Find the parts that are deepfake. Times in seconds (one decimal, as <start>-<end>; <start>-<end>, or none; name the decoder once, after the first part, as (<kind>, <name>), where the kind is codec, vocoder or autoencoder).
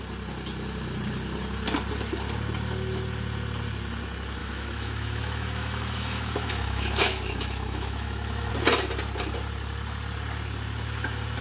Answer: 4.4-8.5 (autoencoder, DAC-VAE)